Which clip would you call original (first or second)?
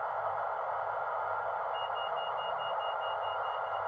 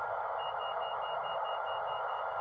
first